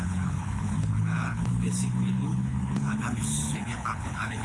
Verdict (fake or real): fake